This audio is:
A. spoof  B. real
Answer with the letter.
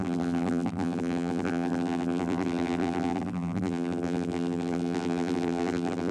A